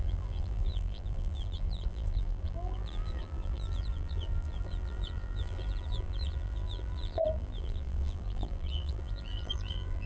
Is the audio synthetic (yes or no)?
yes